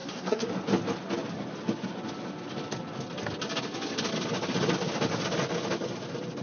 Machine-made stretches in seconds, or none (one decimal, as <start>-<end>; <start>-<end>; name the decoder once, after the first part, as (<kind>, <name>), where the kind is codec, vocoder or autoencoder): 0.0-0.5 (codec, SNAC)